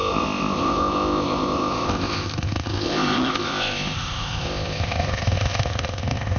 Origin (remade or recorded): remade